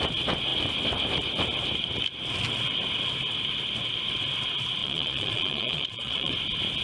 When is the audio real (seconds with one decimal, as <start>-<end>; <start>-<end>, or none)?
0.0-4.8; 6.3-6.8